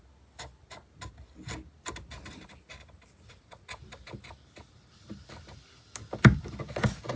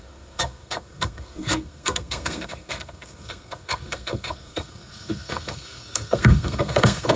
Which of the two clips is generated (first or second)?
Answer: second